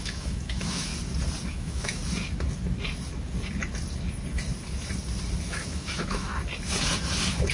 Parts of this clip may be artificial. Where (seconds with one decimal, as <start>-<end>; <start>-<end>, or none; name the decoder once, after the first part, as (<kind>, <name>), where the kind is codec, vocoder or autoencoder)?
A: 0.0-0.9 (autoencoder, DAC-VAE); 1.5-2.0; 5.5-6.3